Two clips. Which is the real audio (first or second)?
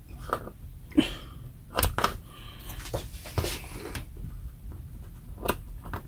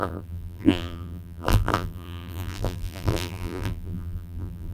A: first